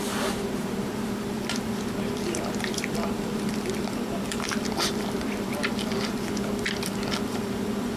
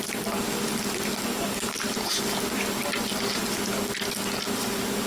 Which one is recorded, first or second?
second